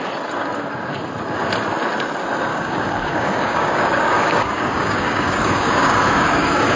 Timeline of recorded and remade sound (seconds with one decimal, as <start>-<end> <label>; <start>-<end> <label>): 0.0-2.5 recorded; 2.5-6.8 remade